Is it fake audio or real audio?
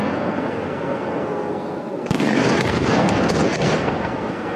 fake